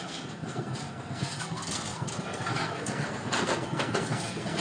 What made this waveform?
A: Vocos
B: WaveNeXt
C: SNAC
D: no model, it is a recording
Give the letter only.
C